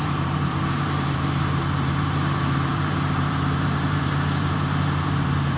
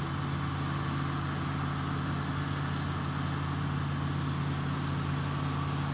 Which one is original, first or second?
second